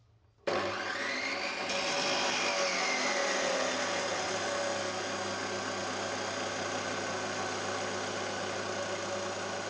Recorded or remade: recorded